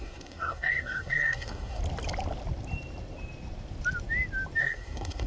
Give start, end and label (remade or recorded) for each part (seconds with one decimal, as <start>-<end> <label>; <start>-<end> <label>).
0.0-1.8 remade; 1.8-4.6 recorded; 4.6-5.3 remade